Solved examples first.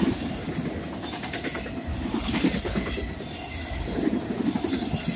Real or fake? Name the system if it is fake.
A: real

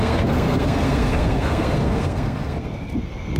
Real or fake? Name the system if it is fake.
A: fake, codec, SNAC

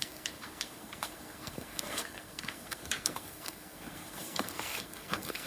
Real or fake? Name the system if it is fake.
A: fake, codec, SNAC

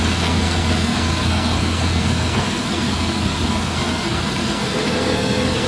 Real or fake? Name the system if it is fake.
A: fake, codec, SNAC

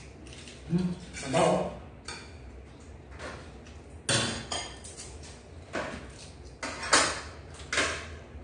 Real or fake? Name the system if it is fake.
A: real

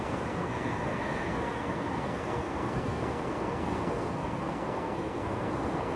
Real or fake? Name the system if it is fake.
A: fake, codec, SNAC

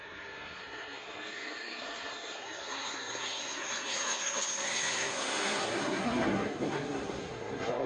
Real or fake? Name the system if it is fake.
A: fake, codec, SNAC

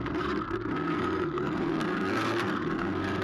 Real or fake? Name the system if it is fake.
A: fake, codec, SNAC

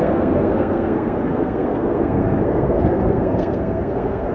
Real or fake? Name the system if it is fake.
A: fake, codec, SNAC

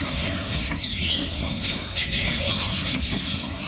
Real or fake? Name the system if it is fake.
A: fake, codec, SNAC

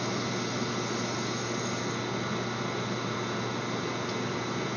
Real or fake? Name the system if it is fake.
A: real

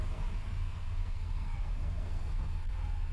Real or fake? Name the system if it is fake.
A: fake, codec, SNAC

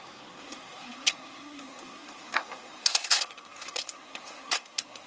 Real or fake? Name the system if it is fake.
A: fake, codec, SNAC